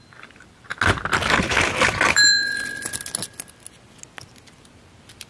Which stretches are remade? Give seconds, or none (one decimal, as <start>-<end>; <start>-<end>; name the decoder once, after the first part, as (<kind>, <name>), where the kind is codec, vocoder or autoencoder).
none